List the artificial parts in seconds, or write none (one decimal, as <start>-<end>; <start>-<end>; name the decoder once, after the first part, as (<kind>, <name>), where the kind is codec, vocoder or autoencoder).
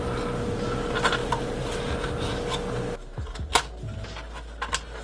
1.2-1.8 (vocoder, BigVGAN v2)